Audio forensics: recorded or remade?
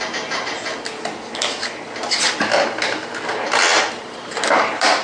recorded